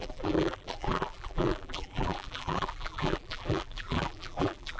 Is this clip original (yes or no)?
no